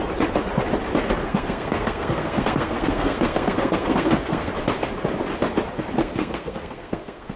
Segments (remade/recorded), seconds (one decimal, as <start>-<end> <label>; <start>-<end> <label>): 0.0-1.2 recorded; 1.2-4.5 remade; 4.5-6.0 recorded; 6.0-7.4 remade